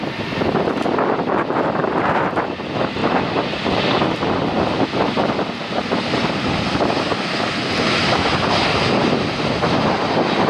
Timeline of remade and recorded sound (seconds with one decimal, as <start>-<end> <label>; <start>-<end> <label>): 0.0-10.5 recorded